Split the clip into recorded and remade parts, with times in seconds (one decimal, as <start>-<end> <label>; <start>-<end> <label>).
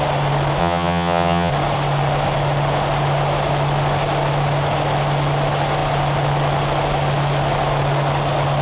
0.0-0.6 recorded; 0.6-1.5 remade; 1.5-8.6 recorded